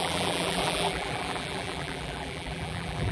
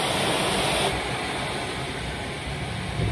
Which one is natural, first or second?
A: second